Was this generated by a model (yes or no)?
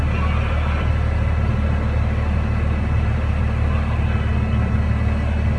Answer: no